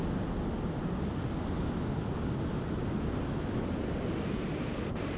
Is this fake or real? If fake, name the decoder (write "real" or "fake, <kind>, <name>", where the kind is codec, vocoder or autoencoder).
real